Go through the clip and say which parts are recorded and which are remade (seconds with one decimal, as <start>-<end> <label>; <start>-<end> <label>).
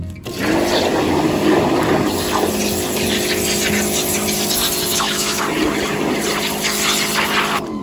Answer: 0.0-4.9 recorded; 4.9-5.4 remade; 5.4-7.8 recorded